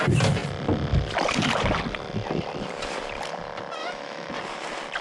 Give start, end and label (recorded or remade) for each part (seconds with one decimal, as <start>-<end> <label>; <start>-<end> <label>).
0.0-3.8 recorded; 3.8-4.3 remade; 4.3-5.0 recorded

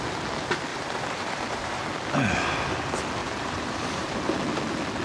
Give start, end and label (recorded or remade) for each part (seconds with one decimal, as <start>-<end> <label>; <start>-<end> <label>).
0.0-0.7 recorded; 0.7-1.8 remade; 1.8-3.2 recorded; 3.2-4.2 remade; 4.2-5.0 recorded

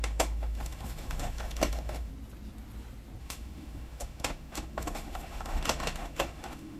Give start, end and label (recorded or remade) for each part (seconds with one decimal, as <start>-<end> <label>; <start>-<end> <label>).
0.0-2.1 remade; 2.1-3.2 recorded; 3.2-6.8 remade

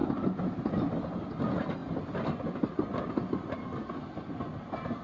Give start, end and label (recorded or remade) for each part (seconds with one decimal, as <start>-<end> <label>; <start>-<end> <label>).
0.0-5.0 recorded